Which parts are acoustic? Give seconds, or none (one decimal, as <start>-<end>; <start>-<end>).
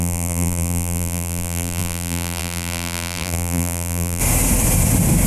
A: 4.2-5.3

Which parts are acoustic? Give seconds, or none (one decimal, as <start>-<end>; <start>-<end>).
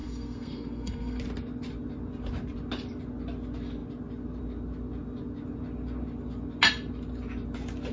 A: 1.2-7.9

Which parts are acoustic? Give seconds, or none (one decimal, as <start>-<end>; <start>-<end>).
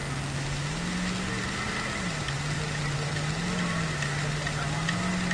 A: 0.0-5.3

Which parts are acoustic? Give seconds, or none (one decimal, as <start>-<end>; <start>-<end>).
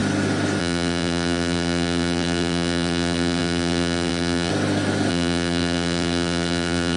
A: 0.0-0.6; 4.5-5.1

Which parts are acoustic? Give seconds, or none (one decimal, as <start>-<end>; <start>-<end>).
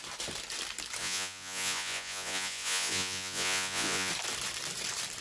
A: 0.0-1.0; 4.1-5.2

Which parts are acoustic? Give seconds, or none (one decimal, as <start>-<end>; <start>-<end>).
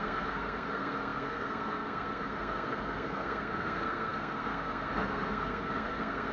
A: none